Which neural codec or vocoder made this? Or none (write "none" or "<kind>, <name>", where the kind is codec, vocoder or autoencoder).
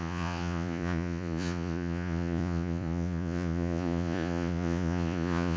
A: vocoder, Vocos